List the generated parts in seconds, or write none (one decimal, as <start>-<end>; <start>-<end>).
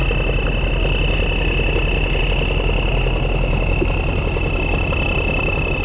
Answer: none